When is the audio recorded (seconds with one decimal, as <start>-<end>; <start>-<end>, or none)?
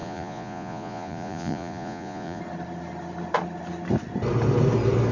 2.4-5.1